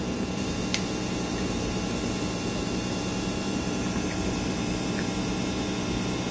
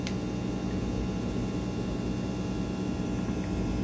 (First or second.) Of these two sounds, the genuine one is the second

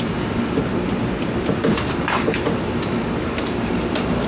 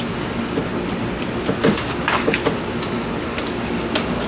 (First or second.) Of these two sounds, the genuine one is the second